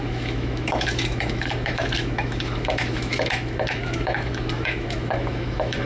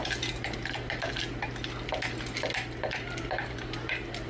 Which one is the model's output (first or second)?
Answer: first